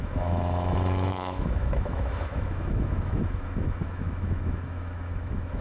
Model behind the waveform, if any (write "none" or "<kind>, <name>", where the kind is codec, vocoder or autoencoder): autoencoder, DAC-VAE